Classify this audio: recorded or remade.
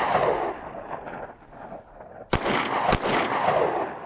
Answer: recorded